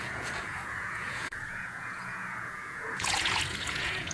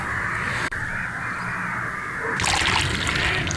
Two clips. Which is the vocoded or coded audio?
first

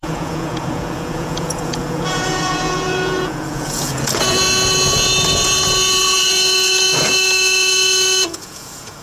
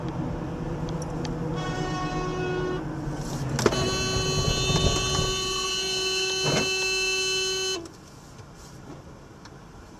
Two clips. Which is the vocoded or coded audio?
first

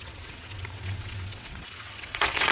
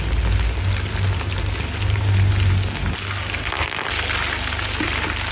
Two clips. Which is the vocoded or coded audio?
first